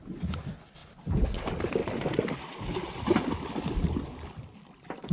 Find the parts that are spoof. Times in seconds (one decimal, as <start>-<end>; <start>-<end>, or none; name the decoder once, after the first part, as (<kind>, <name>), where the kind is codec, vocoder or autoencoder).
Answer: 0.8-1.4 (vocoder, BigVGAN v2)